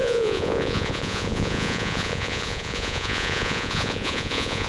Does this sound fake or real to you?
fake